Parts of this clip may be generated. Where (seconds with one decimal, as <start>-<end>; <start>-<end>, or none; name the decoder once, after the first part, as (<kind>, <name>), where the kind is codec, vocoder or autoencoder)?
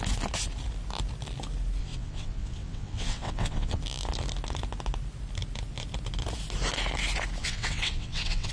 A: 1.8-3.8 (vocoder, WaveNeXt); 7.4-8.5